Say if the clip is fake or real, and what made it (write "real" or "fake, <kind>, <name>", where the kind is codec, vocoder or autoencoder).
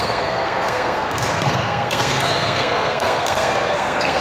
fake, codec, SNAC